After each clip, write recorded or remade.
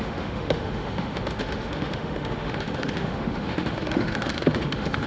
remade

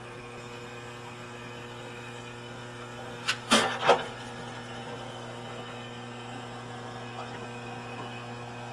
recorded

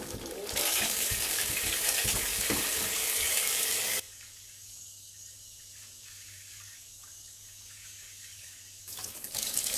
remade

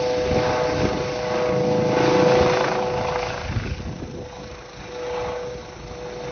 recorded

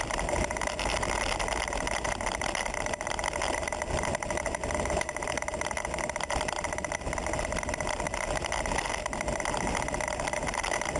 recorded